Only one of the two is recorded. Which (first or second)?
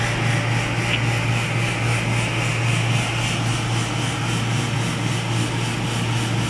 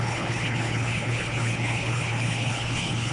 first